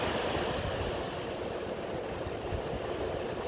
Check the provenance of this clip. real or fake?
real